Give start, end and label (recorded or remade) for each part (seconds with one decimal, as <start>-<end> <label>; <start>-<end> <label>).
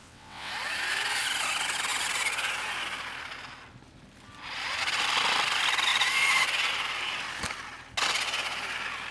0.0-0.5 remade; 0.5-9.1 recorded